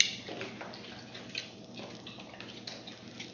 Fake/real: real